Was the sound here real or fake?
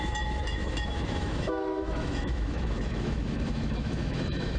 fake